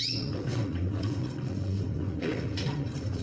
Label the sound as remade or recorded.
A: remade